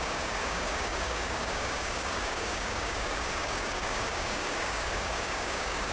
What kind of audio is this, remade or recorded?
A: remade